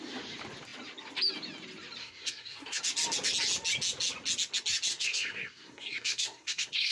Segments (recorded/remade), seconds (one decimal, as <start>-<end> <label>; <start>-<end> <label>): 0.0-2.0 recorded; 2.0-2.8 remade; 2.8-4.9 recorded; 4.9-6.9 remade